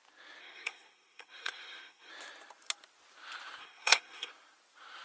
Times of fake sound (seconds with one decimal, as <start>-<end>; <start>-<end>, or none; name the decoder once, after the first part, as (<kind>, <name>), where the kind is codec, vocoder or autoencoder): 0.4-2.1 (codec, SNAC); 3.6-4.3